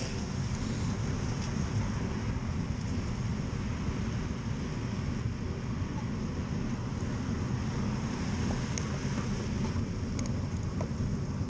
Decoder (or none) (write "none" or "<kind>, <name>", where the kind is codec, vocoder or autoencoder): none